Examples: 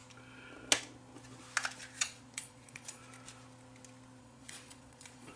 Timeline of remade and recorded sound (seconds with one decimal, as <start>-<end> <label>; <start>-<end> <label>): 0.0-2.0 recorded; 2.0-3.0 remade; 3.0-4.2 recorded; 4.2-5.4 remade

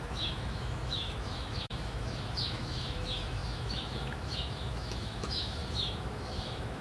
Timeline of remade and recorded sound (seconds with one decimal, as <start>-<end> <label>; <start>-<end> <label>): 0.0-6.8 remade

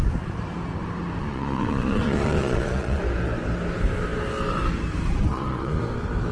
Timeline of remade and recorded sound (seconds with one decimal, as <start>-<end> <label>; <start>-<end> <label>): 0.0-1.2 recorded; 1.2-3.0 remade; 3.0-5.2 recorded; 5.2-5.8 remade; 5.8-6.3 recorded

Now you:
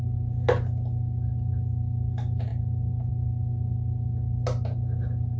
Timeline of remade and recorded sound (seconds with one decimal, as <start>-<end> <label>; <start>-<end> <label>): 0.0-5.4 recorded

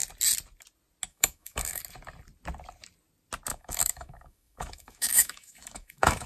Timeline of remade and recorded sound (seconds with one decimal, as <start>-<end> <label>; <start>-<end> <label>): 0.0-1.1 recorded; 1.1-1.8 remade; 1.8-3.5 recorded; 3.5-6.3 remade

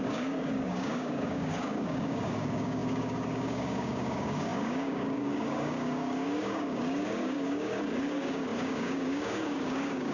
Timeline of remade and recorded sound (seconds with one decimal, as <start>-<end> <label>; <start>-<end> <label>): 0.0-10.1 remade